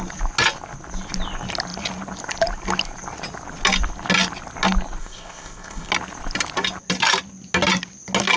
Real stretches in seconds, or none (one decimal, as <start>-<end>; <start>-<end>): 0.0-5.0; 5.9-8.4